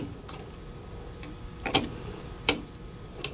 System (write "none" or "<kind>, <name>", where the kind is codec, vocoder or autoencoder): none